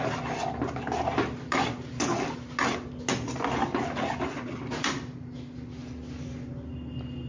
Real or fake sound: real